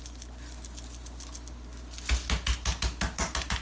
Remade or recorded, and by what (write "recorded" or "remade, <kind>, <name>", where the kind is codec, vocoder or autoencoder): recorded